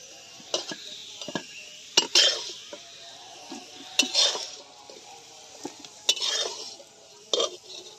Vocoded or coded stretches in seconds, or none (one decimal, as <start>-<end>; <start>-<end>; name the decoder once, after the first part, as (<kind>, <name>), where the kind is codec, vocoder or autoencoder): none